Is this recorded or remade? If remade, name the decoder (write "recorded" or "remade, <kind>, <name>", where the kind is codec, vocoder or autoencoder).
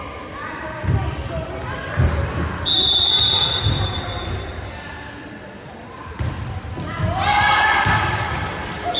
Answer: remade, vocoder, BigVGAN v2